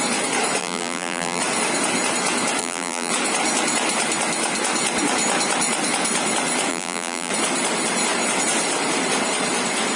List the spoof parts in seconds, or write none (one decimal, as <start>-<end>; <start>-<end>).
0.6-1.4; 2.6-3.1; 6.7-7.3